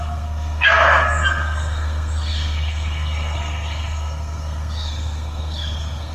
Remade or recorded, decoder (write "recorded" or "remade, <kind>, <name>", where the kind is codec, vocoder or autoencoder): remade, codec, SNAC